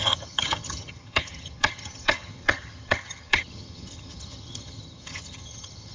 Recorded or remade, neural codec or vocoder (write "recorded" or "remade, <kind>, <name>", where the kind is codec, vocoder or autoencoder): remade, vocoder, HiFi-GAN